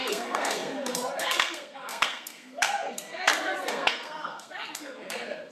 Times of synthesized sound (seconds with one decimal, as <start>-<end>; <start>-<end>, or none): 0.0-5.5